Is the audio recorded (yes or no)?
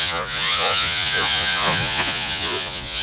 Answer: no